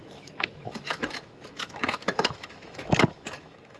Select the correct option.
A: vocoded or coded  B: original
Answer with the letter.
A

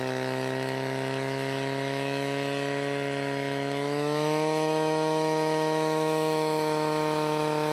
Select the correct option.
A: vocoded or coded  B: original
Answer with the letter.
A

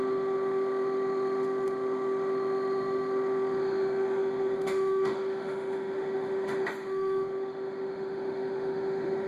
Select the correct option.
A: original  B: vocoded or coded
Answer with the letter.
B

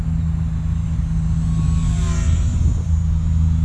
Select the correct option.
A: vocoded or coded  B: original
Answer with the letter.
B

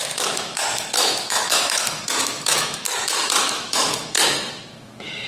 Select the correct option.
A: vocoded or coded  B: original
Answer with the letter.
A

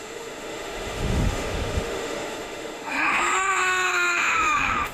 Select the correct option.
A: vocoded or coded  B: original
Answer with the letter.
A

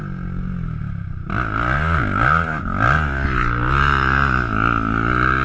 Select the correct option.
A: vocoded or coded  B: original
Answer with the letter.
B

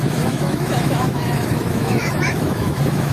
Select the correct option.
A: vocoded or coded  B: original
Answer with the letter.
A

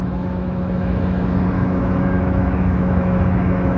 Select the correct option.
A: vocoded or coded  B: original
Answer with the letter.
A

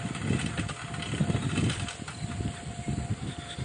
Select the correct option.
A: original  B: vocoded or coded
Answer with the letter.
A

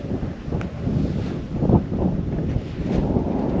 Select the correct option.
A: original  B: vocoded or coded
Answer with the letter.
A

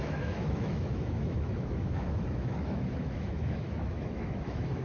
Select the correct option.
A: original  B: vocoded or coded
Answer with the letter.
B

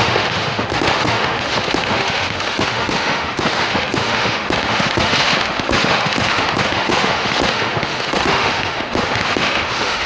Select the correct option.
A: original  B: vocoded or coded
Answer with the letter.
B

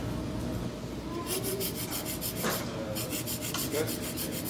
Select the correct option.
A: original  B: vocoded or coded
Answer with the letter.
A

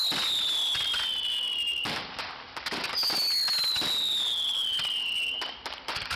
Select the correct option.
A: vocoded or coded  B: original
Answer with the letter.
B